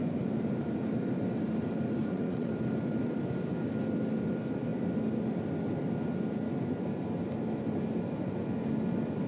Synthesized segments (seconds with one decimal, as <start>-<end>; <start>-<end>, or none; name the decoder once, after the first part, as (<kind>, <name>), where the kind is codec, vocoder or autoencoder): 2.0-2.5 (vocoder, Vocos)